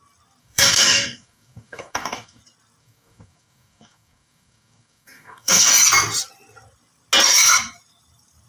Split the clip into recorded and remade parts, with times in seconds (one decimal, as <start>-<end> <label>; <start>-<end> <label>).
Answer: 0.0-0.4 recorded; 0.4-2.4 remade; 2.4-2.8 recorded; 2.8-5.7 remade; 5.7-8.5 recorded